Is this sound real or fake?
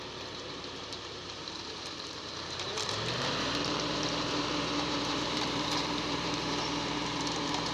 fake